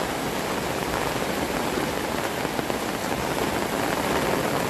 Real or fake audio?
real